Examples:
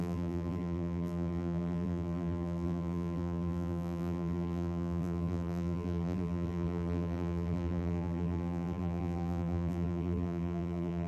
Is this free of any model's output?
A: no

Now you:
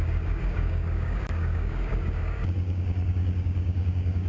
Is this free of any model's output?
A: no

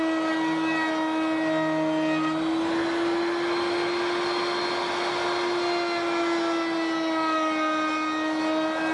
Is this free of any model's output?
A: yes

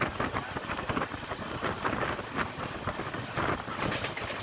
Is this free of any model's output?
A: yes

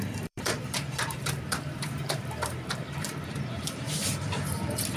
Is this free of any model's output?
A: no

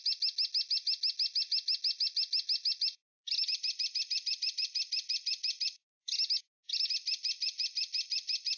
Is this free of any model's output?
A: yes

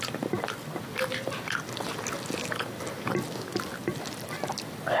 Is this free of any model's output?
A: yes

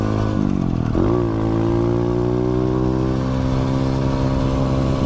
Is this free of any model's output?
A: yes